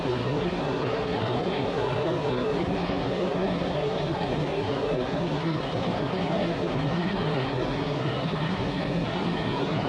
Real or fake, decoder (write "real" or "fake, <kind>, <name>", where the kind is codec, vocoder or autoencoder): fake, codec, SNAC